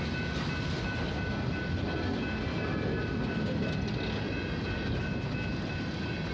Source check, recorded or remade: recorded